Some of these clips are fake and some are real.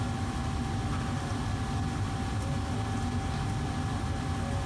real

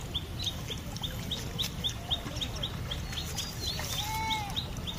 real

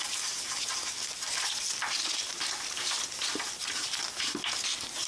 real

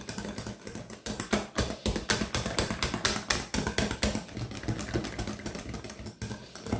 real